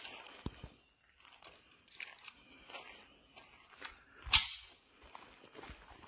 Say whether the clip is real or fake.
real